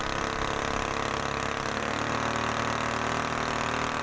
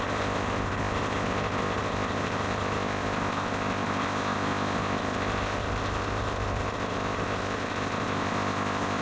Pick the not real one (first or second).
second